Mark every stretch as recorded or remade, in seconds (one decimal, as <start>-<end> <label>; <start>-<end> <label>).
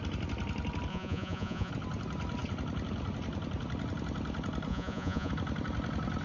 0.0-0.9 recorded; 0.9-1.7 remade; 1.7-4.7 recorded; 4.7-5.3 remade; 5.3-6.2 recorded